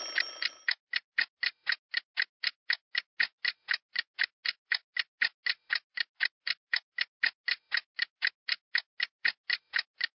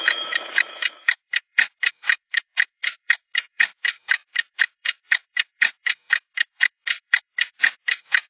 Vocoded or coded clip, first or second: second